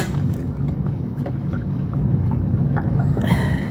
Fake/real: fake